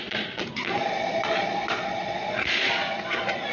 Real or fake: fake